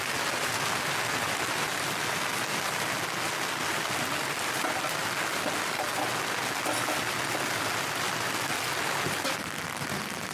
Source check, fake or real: real